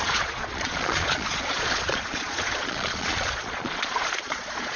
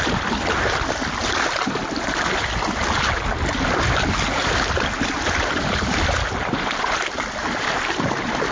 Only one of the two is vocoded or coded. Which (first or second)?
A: first